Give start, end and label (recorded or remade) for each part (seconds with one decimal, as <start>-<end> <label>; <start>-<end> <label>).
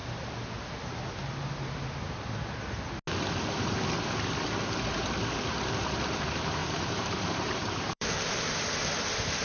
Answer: 0.0-6.6 recorded; 6.6-8.4 remade; 8.4-9.4 recorded